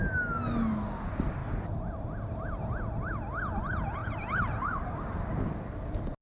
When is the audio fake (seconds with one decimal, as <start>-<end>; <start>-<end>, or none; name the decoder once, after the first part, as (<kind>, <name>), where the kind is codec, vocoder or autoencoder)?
none